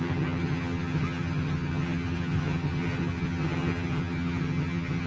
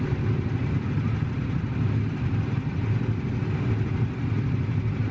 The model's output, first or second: first